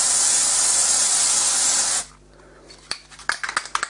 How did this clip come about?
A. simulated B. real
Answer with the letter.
B